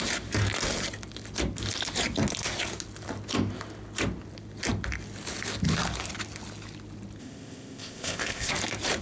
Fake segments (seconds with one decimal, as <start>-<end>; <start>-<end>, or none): 7.2-8.5